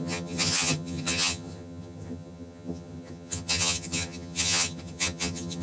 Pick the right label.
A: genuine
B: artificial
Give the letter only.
B